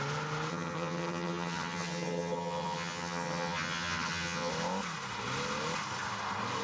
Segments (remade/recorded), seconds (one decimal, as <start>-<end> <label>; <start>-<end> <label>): 0.0-0.5 recorded; 0.5-4.5 remade; 4.5-6.6 recorded